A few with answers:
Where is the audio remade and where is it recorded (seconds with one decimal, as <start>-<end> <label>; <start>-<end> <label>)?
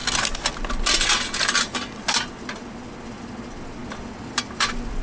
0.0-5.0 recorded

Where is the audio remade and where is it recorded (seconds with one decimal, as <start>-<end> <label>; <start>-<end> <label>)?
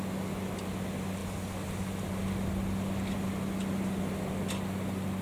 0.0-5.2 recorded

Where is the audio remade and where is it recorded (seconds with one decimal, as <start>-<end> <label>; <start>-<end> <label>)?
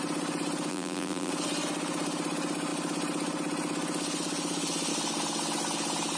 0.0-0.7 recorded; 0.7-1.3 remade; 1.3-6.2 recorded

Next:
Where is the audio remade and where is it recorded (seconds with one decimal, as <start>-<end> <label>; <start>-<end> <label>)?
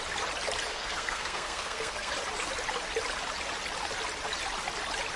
0.0-0.7 recorded; 0.7-2.1 remade; 2.1-5.2 recorded